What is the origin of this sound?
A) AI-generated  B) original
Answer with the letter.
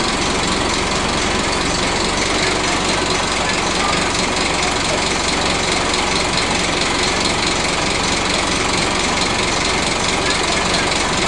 B